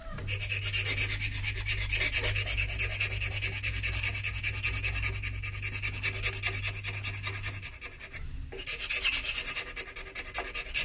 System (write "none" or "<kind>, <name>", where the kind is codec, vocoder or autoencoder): none